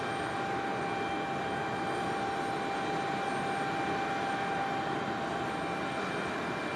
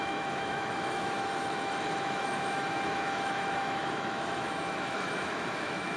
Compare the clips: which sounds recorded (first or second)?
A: first